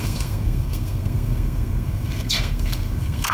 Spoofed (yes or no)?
yes